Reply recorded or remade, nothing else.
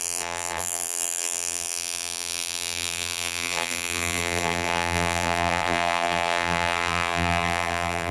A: remade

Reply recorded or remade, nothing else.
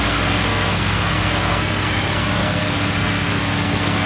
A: remade